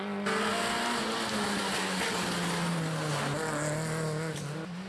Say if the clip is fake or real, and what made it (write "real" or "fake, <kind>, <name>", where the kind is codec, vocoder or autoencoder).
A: real